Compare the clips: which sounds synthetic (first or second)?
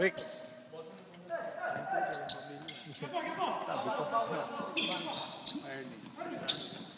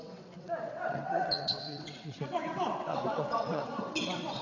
second